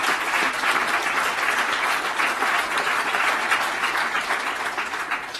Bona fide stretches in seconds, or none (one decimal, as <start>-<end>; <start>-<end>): 1.0-3.1; 3.9-5.4